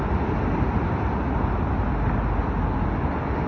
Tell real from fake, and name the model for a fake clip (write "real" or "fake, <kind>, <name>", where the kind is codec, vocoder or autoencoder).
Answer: real